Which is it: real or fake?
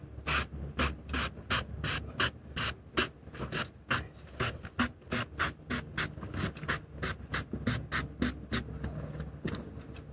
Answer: real